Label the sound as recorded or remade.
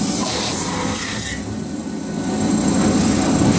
recorded